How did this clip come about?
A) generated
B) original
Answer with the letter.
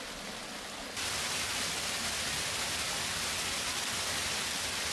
B